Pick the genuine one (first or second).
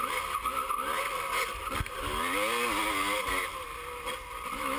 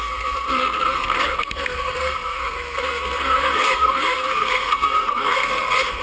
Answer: first